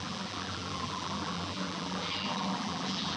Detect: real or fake fake